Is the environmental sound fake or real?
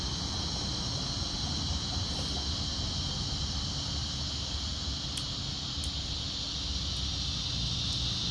real